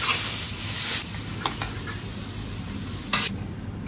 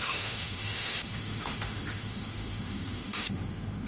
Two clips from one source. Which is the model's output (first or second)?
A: second